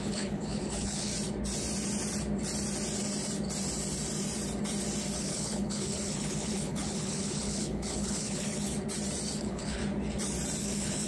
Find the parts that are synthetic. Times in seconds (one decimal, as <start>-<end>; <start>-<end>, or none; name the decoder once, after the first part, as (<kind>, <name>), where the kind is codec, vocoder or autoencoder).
0.0-1.1 (codec, HILCodec); 5.2-8.7; 9.4-9.8; 10.6-11.1